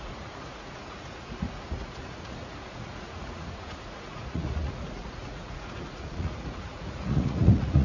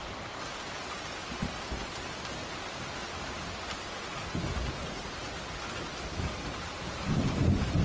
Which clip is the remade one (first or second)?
first